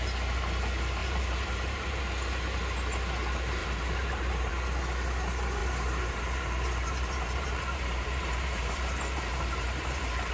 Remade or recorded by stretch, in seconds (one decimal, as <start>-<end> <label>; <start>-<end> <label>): 0.0-1.0 recorded; 1.0-2.0 remade; 2.0-3.6 recorded; 3.6-4.5 remade; 4.5-5.6 recorded; 5.6-10.3 remade